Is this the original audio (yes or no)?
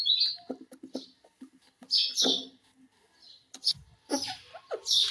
yes